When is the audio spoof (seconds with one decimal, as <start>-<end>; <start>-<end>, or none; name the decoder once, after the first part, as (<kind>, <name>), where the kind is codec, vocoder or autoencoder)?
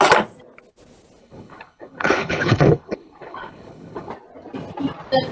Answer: 1.2-4.1 (codec, HILCodec)